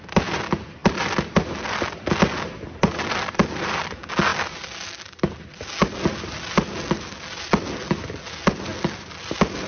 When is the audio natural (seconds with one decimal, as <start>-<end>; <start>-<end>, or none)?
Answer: 0.0-9.7